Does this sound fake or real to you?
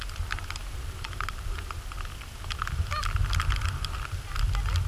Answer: real